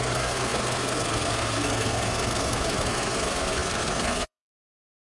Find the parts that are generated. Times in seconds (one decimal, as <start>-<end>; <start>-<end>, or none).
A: 0.0-5.0